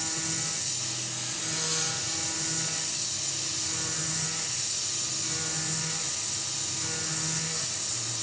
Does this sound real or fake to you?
real